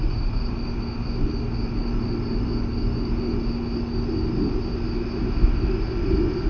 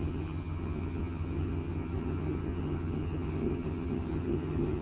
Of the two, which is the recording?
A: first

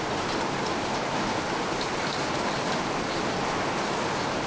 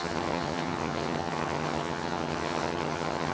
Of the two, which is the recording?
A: first